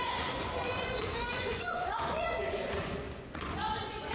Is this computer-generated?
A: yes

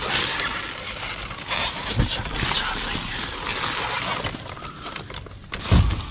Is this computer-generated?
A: no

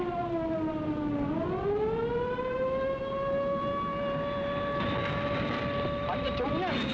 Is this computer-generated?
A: no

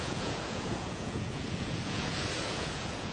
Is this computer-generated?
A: yes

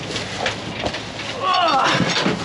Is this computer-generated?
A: no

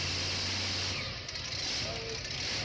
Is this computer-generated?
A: no